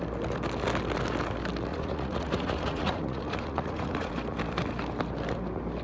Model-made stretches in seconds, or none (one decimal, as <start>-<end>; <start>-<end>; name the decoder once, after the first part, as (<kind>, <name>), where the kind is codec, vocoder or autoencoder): 1.7-4.1 (vocoder, Vocos)